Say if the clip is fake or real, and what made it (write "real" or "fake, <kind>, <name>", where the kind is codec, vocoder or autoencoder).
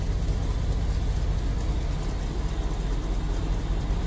real